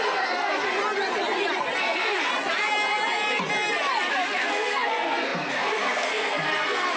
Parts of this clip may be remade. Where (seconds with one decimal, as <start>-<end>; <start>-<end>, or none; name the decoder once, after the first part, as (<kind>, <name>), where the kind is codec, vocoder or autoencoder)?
0.0-0.8 (codec, SNAC); 1.8-2.3; 4.1-7.0